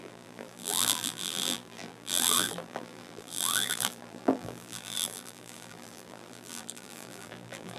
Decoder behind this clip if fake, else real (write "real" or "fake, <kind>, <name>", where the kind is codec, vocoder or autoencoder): fake, vocoder, BigVGAN v2